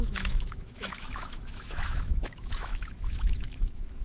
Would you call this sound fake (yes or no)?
yes